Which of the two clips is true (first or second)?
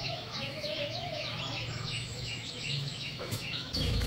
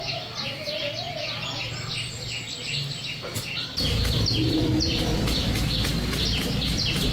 second